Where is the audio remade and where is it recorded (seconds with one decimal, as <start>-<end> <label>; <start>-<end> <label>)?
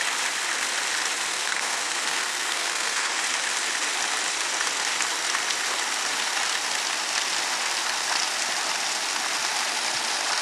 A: 0.0-1.3 recorded; 1.3-3.2 remade; 3.2-10.4 recorded